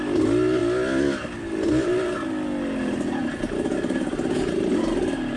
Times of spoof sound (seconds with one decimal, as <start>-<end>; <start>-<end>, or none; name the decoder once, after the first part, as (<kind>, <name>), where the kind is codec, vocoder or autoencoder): none